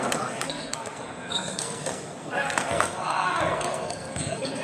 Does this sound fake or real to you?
fake